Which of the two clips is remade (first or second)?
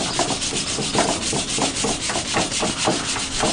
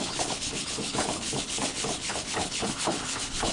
second